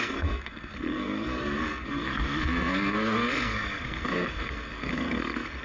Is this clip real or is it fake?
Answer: fake